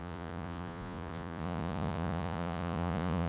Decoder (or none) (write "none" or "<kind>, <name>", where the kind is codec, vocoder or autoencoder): vocoder, Vocos